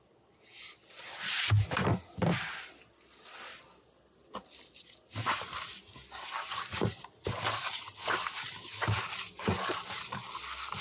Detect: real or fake real